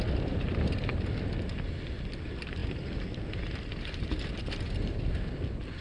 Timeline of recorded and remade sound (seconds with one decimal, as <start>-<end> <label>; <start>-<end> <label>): 0.0-5.8 recorded